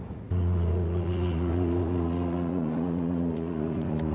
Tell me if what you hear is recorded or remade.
remade